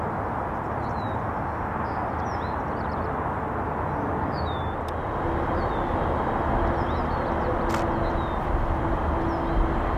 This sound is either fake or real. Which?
real